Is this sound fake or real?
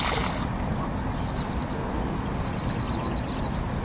real